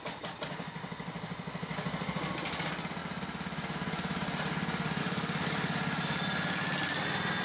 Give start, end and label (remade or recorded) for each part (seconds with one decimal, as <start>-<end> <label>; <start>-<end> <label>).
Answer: 0.0-7.4 recorded